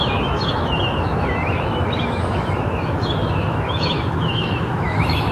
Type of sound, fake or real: fake